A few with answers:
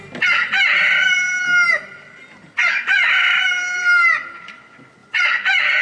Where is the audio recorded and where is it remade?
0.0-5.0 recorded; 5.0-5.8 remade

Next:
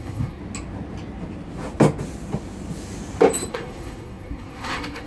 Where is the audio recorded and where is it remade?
0.0-0.4 remade; 0.4-3.5 recorded; 3.5-5.1 remade

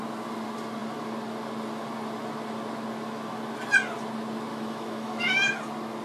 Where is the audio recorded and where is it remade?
0.0-4.5 recorded; 4.5-5.6 remade; 5.6-6.0 recorded

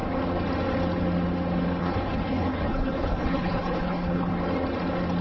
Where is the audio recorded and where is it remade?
0.0-1.8 recorded; 1.8-4.3 remade; 4.3-5.2 recorded

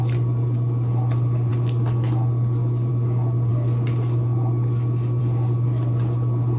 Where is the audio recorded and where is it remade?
0.0-6.6 recorded

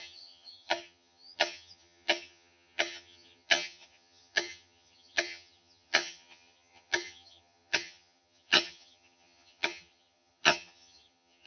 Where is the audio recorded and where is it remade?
0.0-11.5 remade

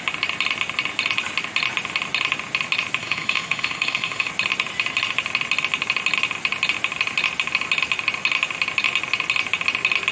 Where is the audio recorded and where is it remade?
0.0-3.0 recorded; 3.0-4.3 remade; 4.3-10.1 recorded

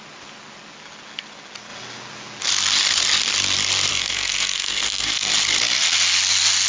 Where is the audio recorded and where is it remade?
0.0-3.9 recorded; 3.9-5.3 remade; 5.3-6.7 recorded